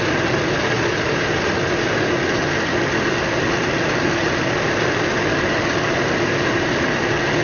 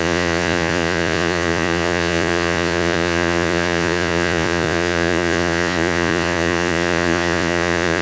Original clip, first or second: first